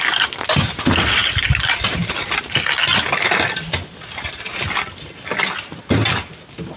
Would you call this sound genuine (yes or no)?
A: yes